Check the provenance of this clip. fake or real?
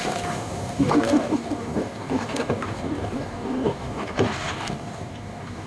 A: fake